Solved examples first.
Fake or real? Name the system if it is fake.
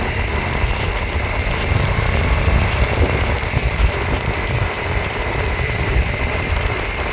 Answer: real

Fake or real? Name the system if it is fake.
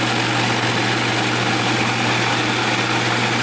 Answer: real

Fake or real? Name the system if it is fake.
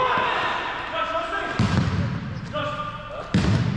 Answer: real